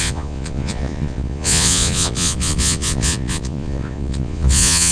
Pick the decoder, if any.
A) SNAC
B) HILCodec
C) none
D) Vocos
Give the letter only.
D